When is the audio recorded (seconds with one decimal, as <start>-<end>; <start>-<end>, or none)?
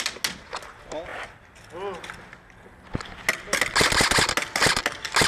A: 0.0-5.3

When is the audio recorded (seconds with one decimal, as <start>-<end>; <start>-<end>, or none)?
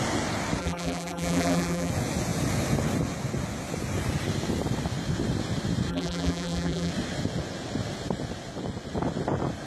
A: 0.0-0.6; 1.9-5.9; 6.9-9.7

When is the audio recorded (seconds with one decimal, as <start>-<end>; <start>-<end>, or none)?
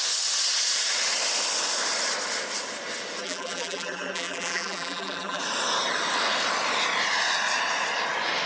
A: 0.0-3.2; 5.4-8.5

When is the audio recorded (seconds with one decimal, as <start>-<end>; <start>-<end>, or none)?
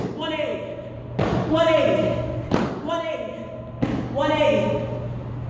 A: 0.0-0.5; 3.7-5.5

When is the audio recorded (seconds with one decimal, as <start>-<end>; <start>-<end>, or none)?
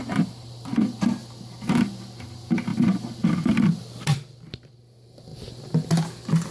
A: none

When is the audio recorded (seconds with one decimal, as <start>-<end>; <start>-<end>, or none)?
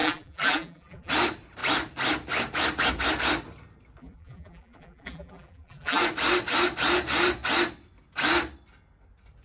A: 1.1-4.0; 6.0-9.4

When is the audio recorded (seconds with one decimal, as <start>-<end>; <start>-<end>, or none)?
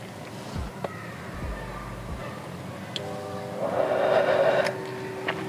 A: 0.0-5.5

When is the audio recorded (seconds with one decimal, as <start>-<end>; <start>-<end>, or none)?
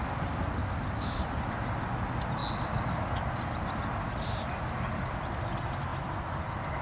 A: 0.0-0.6; 1.5-6.8